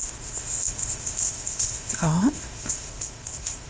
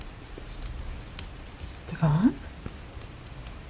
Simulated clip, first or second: first